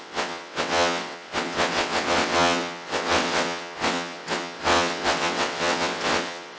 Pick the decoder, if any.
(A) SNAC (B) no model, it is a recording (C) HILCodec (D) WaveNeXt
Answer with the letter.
D